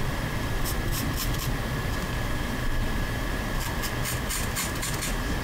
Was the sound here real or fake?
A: fake